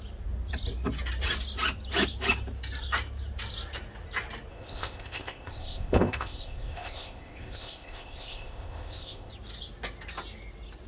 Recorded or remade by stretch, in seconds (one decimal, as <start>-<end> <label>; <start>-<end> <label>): 0.0-4.5 recorded; 4.5-9.3 remade; 9.3-10.9 recorded